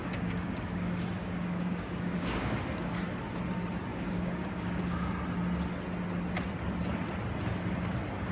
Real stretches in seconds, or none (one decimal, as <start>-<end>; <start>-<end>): 2.9-3.9; 5.1-8.3